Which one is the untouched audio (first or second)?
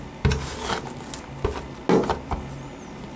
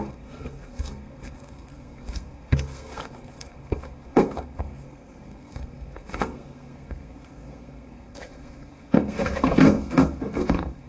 first